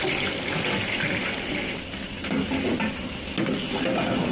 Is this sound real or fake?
real